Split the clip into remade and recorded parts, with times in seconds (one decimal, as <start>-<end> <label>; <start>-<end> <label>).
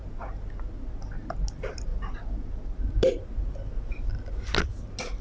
0.0-5.2 recorded